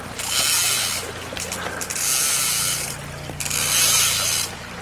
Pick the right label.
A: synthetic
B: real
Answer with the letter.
B